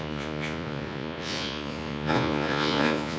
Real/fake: fake